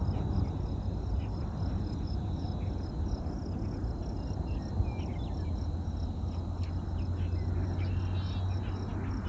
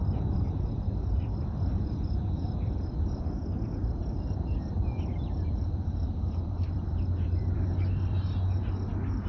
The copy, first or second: second